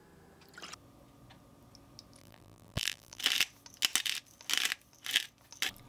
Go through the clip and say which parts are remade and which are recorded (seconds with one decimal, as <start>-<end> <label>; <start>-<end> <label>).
0.0-2.2 recorded; 2.2-3.2 remade; 3.2-5.9 recorded